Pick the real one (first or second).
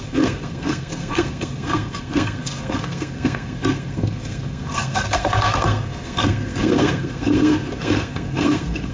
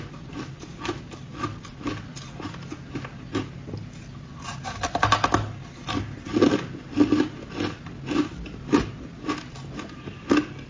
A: second